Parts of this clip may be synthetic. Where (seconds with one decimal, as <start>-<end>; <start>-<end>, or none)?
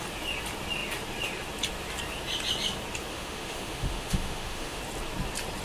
3.1-4.8